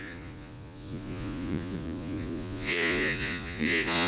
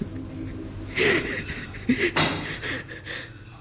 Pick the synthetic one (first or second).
first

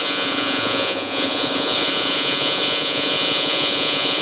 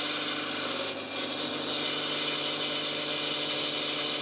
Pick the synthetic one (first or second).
first